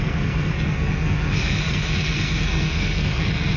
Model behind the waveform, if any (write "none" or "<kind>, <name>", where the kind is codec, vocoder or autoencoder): codec, SNAC